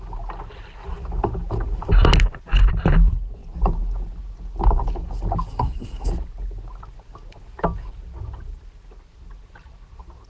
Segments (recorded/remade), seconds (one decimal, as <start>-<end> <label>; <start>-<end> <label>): 0.0-5.5 recorded; 5.5-6.1 remade; 6.1-10.3 recorded